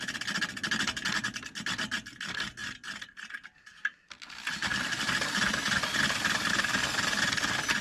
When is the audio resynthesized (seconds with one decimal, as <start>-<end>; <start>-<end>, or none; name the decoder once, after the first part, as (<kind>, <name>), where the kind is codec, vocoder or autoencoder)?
none